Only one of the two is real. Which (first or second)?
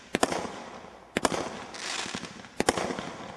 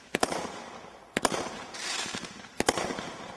first